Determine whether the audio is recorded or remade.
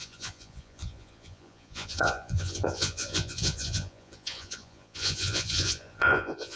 remade